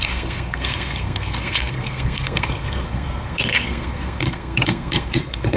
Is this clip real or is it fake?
fake